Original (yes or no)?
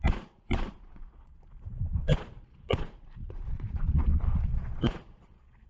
no